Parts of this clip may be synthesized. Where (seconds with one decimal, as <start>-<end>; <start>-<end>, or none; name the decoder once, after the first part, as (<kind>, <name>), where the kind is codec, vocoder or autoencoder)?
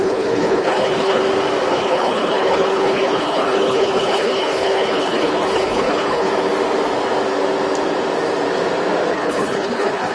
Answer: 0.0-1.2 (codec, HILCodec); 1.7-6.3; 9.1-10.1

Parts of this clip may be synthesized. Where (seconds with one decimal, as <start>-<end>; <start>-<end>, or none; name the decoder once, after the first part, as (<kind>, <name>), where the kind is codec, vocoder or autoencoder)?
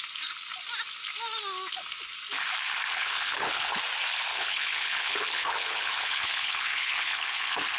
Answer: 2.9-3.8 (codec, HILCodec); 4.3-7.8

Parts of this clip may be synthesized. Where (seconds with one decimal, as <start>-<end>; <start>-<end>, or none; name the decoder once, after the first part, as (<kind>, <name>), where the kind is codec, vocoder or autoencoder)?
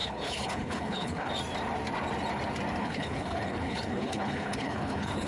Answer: 0.0-1.3 (codec, HILCodec); 2.8-5.3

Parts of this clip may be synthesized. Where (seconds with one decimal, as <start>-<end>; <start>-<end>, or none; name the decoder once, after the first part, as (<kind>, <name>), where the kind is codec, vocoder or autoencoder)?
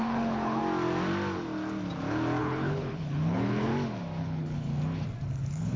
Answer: 0.0-0.6 (codec, HILCodec); 2.4-3.7; 4.2-4.7; 5.3-5.8